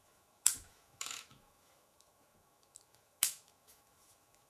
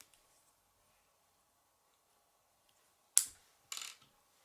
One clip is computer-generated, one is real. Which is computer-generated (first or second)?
first